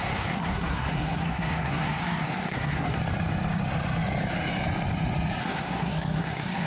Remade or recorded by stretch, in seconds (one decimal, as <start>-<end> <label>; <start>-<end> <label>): 0.0-3.0 remade; 3.0-5.4 recorded; 5.4-6.7 remade